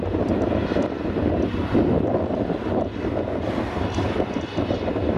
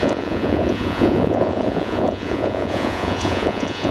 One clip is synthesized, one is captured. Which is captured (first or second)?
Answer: first